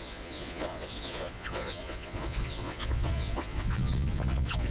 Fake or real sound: fake